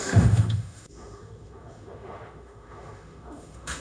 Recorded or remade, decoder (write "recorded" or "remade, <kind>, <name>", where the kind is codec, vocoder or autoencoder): remade, autoencoder, DAC-VAE